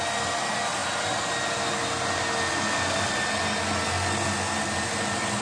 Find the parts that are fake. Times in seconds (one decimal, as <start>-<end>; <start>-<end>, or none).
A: none